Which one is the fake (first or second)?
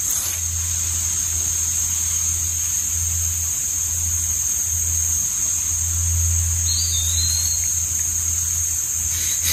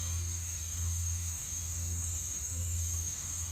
second